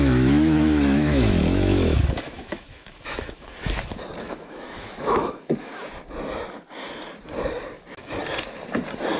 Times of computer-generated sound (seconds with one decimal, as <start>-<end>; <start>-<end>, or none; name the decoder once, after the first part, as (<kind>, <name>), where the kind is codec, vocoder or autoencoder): 0.0-3.5 (autoencoder, DAC-VAE); 4.2-5.7